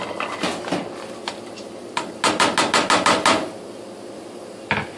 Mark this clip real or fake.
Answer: real